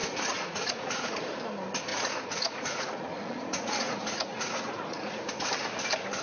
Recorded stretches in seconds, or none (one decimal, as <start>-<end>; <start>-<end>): 1.2-1.9; 5.3-6.2